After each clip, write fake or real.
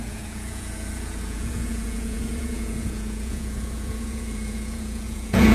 fake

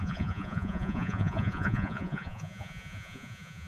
fake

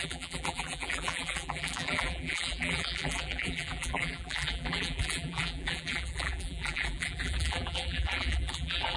fake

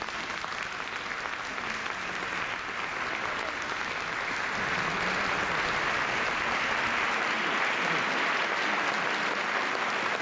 real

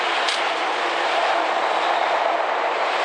real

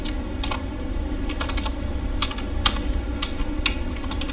real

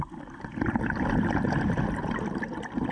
real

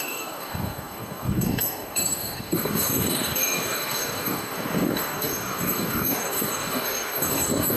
fake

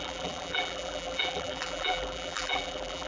fake